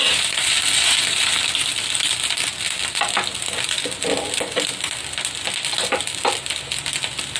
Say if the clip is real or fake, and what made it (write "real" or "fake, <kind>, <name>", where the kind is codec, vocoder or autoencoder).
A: real